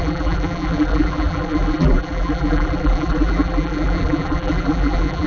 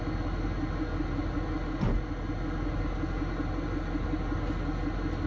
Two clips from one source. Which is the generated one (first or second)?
first